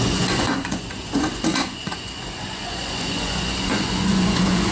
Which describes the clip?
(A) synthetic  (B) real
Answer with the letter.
A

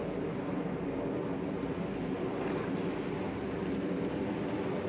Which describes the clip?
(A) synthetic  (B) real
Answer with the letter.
B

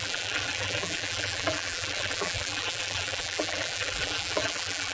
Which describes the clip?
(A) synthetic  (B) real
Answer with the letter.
A